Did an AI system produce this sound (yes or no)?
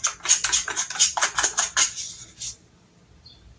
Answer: no